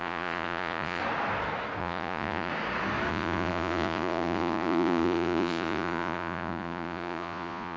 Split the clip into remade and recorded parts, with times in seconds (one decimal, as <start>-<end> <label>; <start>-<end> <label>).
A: 0.0-1.0 remade; 1.0-1.8 recorded; 1.8-2.5 remade; 2.5-3.1 recorded; 3.1-7.8 remade